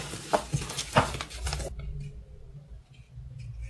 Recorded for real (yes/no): yes